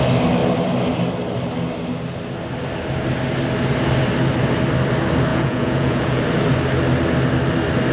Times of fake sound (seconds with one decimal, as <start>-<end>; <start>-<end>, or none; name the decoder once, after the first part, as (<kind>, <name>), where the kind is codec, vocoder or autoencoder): 5.3-6.2 (vocoder, Vocos)